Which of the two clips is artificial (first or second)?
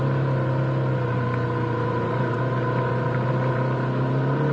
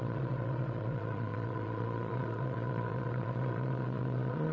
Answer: second